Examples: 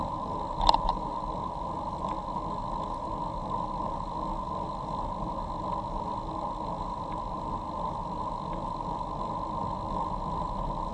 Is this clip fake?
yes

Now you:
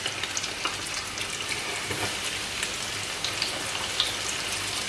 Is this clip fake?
no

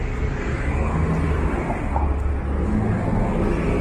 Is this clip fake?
no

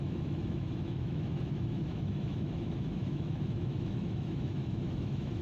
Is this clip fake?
yes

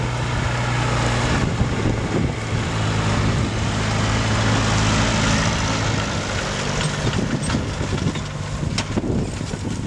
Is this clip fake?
no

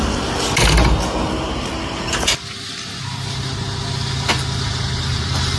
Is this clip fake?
no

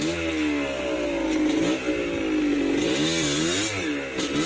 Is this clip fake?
no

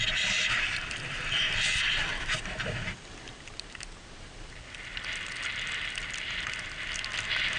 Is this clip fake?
no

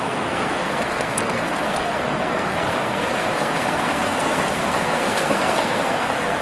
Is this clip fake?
yes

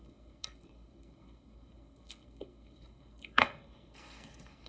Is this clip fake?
yes